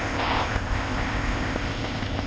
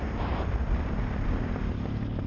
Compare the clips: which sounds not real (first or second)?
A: first